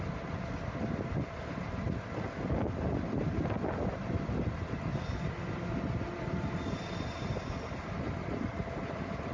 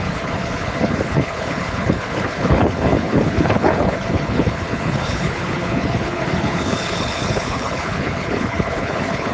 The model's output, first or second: second